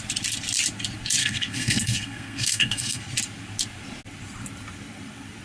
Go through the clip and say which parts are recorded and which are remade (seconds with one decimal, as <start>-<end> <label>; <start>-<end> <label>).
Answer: 0.0-1.2 recorded; 1.2-3.0 remade; 3.0-5.4 recorded